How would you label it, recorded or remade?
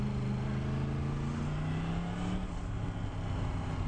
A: recorded